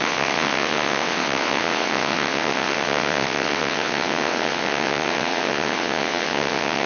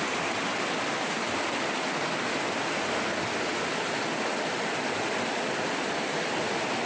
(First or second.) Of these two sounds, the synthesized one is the first